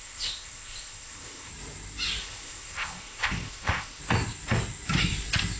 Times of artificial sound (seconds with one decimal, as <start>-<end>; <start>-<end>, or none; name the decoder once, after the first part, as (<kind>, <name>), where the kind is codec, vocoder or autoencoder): 0.0-1.5 (codec, ZipCodec); 2.2-4.0